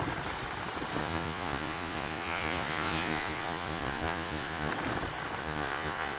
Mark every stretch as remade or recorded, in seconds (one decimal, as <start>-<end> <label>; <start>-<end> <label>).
0.0-1.0 recorded; 1.0-4.7 remade; 4.7-5.4 recorded; 5.4-6.2 remade